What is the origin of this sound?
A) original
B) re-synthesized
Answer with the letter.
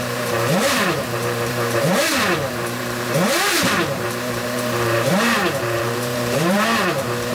B